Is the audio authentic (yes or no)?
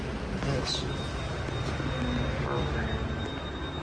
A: yes